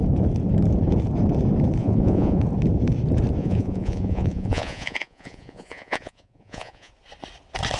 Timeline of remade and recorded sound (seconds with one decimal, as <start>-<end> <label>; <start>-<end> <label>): 0.0-1.8 recorded; 1.8-2.4 remade; 2.4-3.4 recorded; 3.4-6.9 remade; 6.9-7.8 recorded